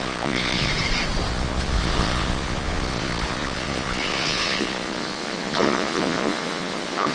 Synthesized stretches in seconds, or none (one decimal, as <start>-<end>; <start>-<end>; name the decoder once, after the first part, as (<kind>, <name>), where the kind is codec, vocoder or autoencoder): 0.0-0.7 (vocoder, Vocos); 1.3-7.1